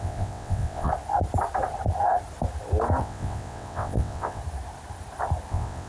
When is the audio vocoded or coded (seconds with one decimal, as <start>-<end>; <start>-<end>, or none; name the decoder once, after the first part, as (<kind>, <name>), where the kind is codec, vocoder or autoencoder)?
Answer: 0.0-0.9 (vocoder, WaveNeXt); 3.0-4.4; 5.5-5.9